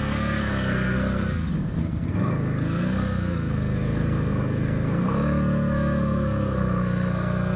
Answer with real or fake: fake